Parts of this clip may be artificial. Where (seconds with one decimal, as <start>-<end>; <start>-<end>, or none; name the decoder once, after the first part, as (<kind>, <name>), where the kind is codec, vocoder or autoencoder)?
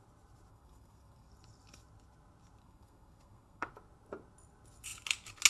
0.5-1.3 (codec, SNAC); 2.6-3.7